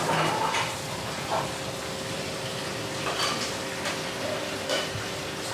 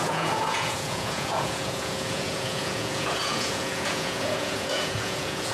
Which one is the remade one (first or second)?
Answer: second